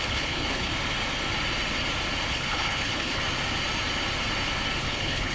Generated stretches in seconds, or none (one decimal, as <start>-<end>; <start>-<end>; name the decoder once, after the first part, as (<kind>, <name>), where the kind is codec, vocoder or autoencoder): 0.0-0.7 (codec, HILCodec); 2.3-3.2; 4.8-5.3